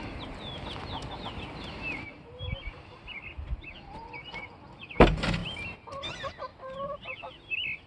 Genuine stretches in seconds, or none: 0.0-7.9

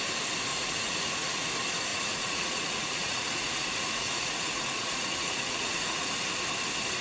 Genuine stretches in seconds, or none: 0.0-0.5; 1.5-1.9; 6.1-7.0

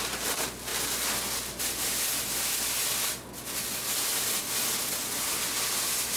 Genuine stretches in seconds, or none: 0.0-6.2

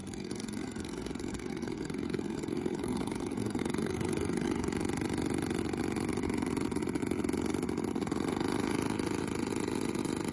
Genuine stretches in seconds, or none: 4.7-10.3